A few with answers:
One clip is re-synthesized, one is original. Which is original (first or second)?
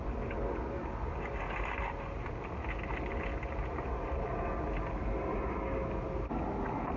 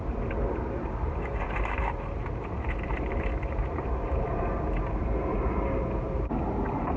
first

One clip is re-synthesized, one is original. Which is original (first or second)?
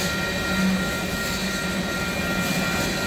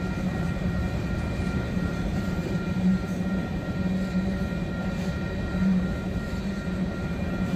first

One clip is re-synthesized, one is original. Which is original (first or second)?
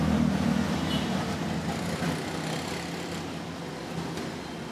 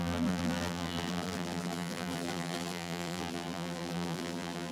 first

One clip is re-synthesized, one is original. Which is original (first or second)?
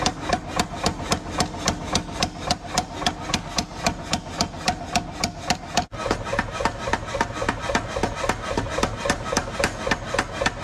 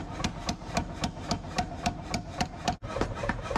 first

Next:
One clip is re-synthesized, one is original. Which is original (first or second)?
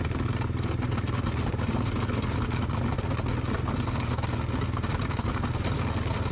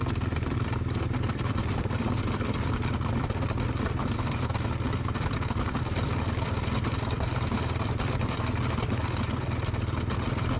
first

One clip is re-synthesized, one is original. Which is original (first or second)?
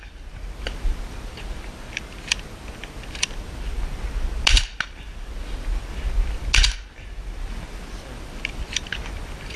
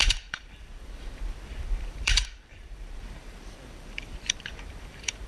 first